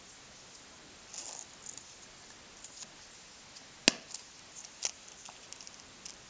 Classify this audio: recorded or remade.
recorded